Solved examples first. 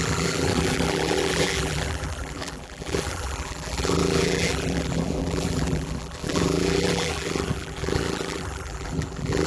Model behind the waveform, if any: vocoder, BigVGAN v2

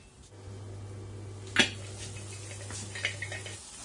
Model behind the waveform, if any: none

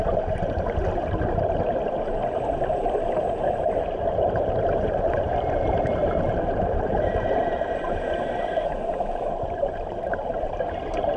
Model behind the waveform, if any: vocoder, BigVGAN v2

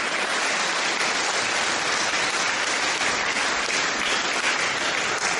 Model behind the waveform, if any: none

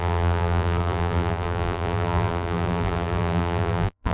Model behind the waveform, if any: vocoder, BigVGAN v2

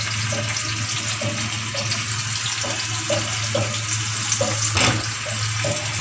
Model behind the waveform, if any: none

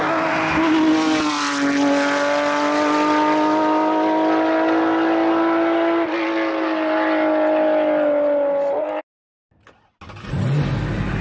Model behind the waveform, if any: none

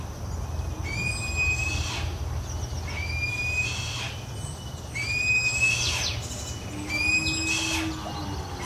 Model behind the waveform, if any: none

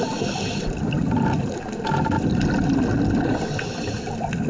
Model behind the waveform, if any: none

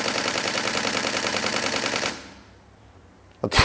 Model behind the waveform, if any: vocoder, BigVGAN v2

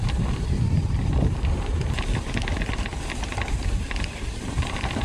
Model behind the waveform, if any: none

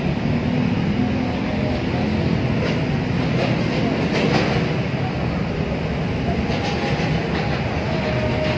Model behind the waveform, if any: none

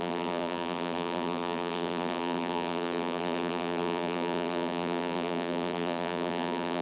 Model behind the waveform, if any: vocoder, BigVGAN v2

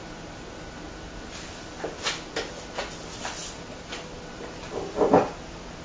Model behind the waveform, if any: none